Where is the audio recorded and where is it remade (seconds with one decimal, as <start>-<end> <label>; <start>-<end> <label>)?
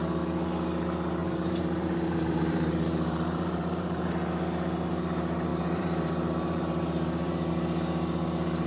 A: 0.0-1.2 recorded; 1.2-4.1 remade; 4.1-5.5 recorded; 5.5-7.5 remade; 7.5-8.7 recorded